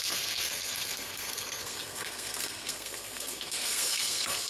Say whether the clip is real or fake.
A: fake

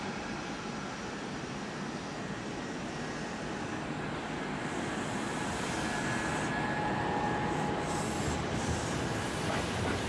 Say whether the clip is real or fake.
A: real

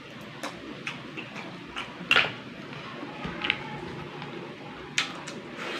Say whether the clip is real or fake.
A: real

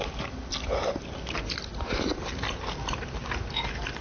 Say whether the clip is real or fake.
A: real